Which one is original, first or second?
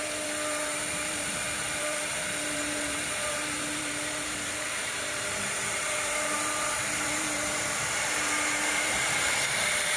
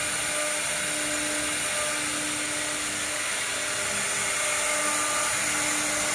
second